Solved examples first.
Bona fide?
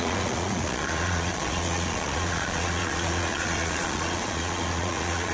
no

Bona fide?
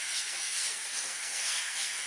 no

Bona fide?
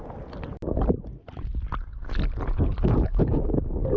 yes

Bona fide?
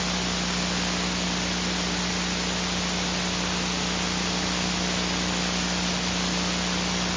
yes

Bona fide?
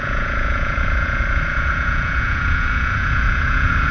no